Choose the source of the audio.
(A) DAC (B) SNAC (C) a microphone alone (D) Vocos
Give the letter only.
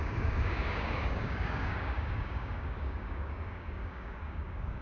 A